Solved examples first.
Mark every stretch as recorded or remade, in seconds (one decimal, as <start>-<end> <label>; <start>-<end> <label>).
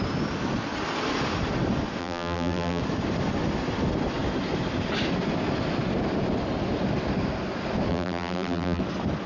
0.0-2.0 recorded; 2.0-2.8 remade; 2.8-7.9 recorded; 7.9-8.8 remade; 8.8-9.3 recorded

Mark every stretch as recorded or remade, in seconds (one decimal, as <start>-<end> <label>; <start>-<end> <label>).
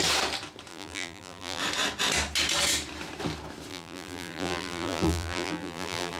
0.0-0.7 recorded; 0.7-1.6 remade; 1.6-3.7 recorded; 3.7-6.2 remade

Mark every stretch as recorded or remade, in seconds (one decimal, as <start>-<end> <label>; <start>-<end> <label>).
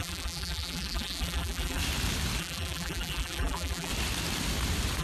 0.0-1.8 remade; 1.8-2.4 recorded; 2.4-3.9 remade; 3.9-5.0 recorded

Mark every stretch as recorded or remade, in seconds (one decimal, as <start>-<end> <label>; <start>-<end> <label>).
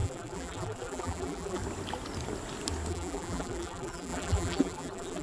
0.0-1.6 remade; 1.6-2.9 recorded; 2.9-5.2 remade